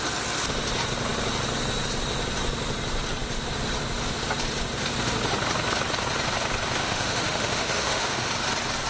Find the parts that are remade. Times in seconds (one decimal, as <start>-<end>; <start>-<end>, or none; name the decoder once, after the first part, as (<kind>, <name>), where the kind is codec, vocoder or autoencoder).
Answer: 6.8-8.3 (autoencoder, DAC-VAE)